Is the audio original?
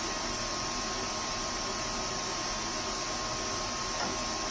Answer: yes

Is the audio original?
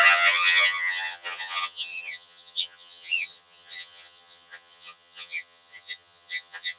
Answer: no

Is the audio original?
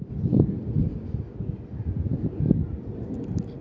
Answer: yes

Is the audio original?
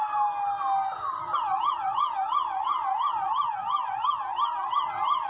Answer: yes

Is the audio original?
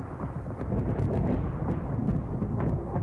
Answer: yes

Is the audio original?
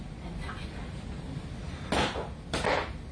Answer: yes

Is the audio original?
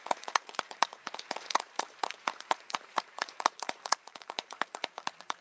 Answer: no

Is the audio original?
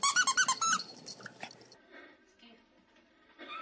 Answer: yes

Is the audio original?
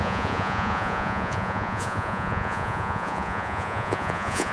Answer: no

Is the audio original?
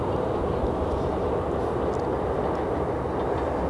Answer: yes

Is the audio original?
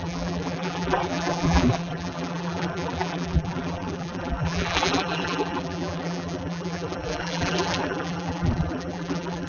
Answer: no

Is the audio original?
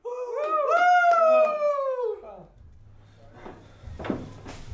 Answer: yes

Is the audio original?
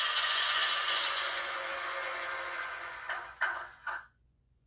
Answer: no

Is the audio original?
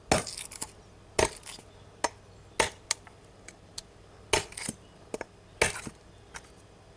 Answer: yes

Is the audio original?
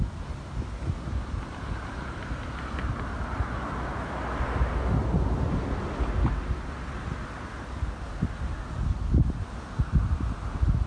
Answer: yes